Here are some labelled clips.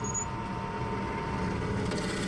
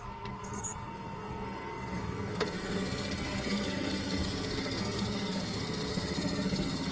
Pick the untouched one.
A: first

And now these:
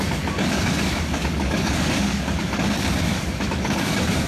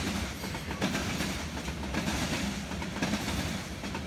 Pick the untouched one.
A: second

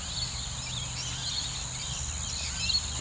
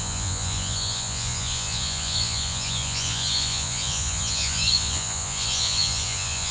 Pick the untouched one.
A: first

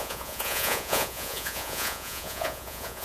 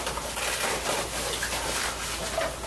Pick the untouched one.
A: second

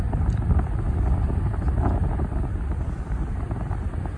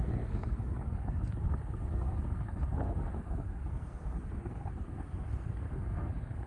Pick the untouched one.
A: first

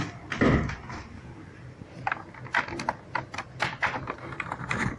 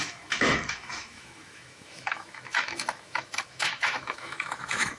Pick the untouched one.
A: first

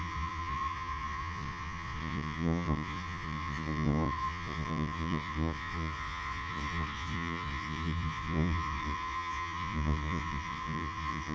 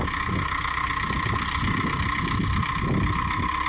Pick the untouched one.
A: second